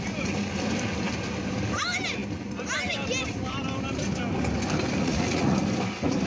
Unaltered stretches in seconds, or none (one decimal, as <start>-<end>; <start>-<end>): 0.0-5.0; 5.6-6.3